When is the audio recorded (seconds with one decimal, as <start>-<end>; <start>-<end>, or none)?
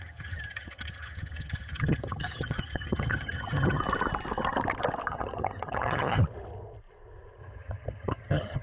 3.8-5.1; 6.2-7.4